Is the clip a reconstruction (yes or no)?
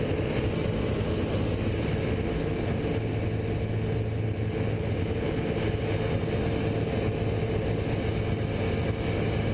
no